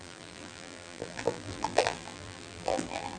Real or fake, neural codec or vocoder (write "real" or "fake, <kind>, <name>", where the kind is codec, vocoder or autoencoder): fake, vocoder, BigVGAN v2